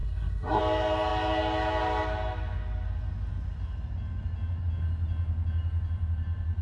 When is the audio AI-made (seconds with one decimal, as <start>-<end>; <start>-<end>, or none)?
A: 0.0-0.6